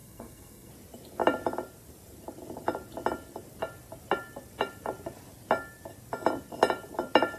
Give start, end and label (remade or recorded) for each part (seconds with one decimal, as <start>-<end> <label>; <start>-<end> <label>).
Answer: 0.0-0.7 remade; 0.7-7.4 recorded